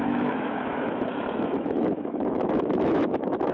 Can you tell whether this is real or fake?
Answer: fake